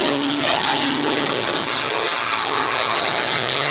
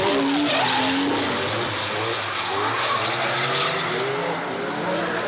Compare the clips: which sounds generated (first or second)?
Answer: first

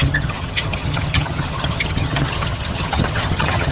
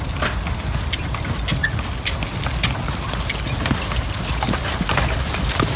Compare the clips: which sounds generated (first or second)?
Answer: first